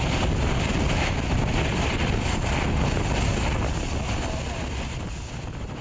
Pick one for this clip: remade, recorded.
recorded